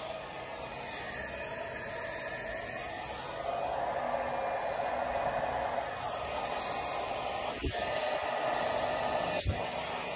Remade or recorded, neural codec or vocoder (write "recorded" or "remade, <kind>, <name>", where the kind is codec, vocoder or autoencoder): recorded